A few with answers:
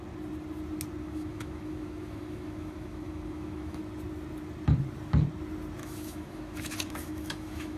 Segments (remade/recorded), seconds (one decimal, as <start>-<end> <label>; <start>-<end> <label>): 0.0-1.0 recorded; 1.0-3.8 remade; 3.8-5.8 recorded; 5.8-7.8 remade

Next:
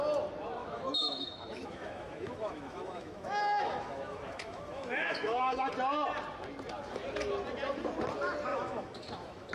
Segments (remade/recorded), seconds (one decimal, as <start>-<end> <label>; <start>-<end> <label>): 0.0-0.6 recorded; 0.6-5.7 remade; 5.7-8.5 recorded; 8.5-9.5 remade

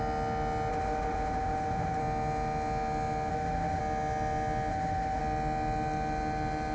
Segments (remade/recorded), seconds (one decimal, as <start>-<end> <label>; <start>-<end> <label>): 0.0-0.7 recorded; 0.7-2.0 remade; 2.0-3.3 recorded; 3.3-3.8 remade; 3.8-4.7 recorded; 4.7-5.2 remade; 5.2-6.7 recorded

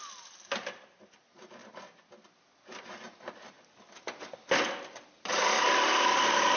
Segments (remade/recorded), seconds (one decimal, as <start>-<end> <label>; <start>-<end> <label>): 0.0-6.6 recorded